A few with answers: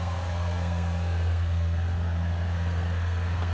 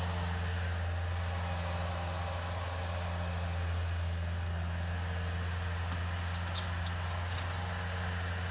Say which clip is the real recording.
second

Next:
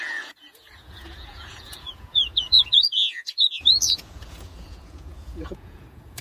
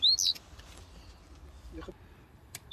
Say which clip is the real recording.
second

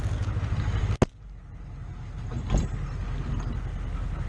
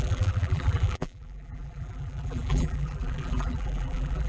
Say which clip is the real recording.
first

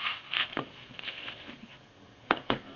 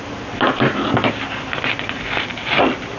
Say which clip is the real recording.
second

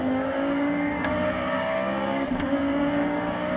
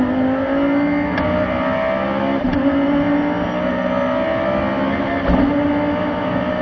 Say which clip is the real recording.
second